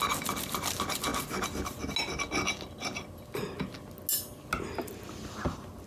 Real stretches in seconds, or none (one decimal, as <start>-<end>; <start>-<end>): 0.0-5.9